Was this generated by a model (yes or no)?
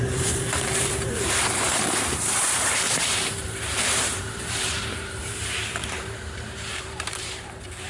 yes